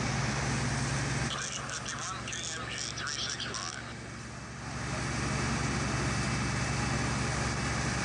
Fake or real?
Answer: real